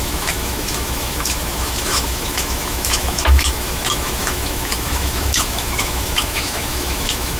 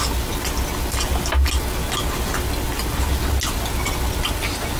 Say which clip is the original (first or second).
second